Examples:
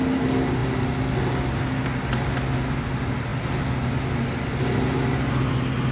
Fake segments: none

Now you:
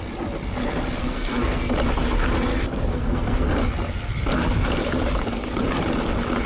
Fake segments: 1.0-1.7 (codec, SNAC); 2.9-3.5

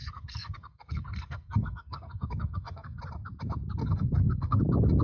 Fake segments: 0.0-3.0 (codec, SNAC); 3.8-4.6